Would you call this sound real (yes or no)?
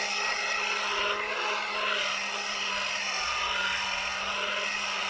yes